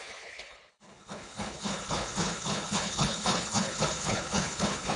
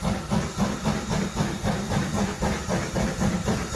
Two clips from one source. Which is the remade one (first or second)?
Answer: first